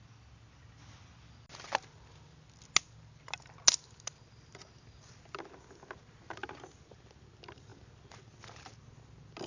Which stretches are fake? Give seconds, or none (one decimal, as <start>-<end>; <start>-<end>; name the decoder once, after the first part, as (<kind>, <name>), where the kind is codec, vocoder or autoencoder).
none

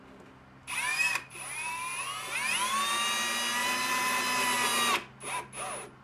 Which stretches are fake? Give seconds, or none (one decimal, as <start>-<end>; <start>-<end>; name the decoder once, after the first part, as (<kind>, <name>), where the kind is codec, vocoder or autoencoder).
0.9-2.0 (vocoder, BigVGAN v2); 3.6-4.2

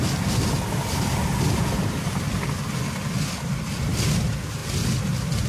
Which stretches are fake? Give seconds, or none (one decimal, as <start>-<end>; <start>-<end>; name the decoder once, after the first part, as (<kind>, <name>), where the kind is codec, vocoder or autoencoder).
none

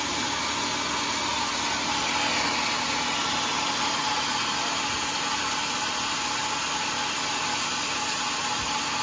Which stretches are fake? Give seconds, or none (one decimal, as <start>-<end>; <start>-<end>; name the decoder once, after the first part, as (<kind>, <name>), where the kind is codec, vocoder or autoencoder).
none